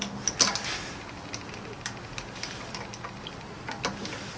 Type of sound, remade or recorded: recorded